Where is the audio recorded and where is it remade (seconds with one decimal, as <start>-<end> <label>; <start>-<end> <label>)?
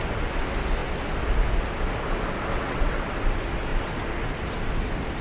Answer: 0.0-2.5 recorded; 2.5-3.0 remade; 3.0-5.2 recorded